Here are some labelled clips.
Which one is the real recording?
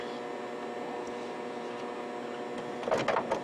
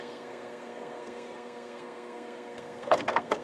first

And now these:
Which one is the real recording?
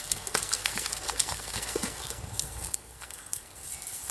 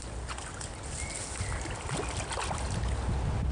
second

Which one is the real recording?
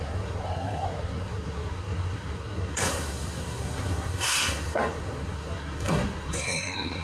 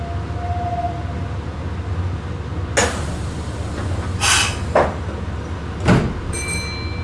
second